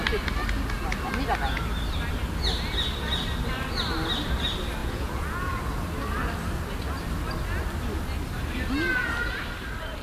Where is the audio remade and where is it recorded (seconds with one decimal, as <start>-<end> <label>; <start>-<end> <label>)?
0.0-4.8 recorded; 4.8-5.6 remade; 5.6-10.0 recorded